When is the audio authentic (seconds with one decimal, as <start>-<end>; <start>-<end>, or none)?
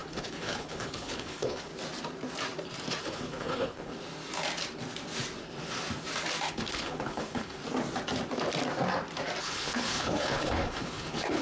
1.7-3.0; 3.9-6.5; 7.6-9.4